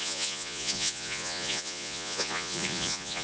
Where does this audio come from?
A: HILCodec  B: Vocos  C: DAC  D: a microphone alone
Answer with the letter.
B